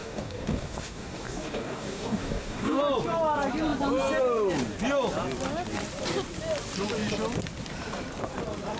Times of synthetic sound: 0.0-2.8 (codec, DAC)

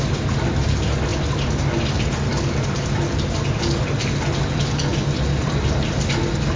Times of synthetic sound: none

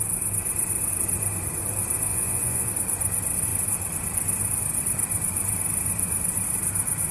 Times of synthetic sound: 2.1-2.7 (vocoder, Vocos)

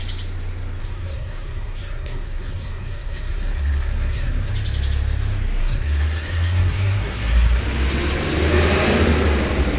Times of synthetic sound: 0.8-4.5 (codec, SNAC); 5.6-7.6

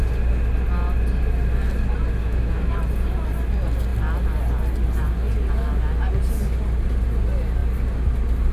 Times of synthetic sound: 2.2-2.7 (autoencoder, DAC-VAE)

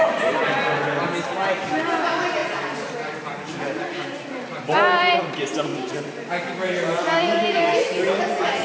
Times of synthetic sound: none